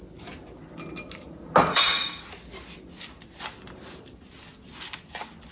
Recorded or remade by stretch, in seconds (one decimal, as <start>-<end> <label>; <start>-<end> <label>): 0.0-1.7 recorded; 1.7-2.2 remade; 2.2-5.5 recorded